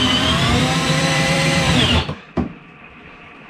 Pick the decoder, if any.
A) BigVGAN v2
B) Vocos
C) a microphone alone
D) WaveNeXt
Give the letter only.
A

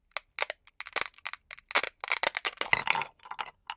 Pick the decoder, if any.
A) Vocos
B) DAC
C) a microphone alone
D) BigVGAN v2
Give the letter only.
C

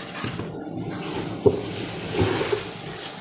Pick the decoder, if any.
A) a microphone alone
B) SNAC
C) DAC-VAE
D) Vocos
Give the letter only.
A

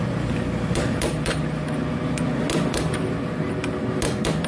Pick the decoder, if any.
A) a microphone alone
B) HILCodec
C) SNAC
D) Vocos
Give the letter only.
A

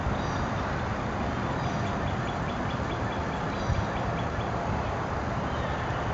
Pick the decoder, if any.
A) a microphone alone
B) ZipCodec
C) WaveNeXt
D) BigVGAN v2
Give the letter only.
A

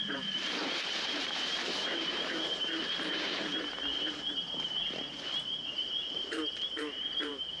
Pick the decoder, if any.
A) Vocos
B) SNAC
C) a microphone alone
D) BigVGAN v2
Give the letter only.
D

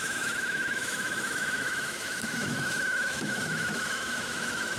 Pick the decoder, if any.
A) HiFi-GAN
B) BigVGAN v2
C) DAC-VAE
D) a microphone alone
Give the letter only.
C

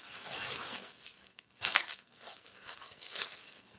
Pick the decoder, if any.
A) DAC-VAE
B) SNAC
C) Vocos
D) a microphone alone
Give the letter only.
B